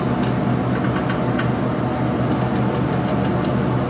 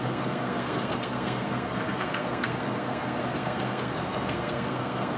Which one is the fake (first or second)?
second